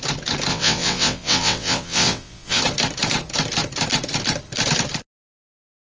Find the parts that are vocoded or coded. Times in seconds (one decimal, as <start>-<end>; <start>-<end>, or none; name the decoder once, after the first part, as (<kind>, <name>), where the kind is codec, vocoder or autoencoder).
0.5-2.6 (vocoder, WaveNeXt)